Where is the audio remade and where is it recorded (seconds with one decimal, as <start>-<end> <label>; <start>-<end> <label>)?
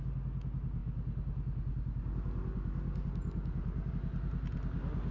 0.0-5.1 recorded